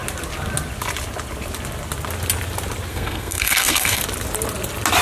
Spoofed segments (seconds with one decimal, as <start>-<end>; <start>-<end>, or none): 2.9-4.0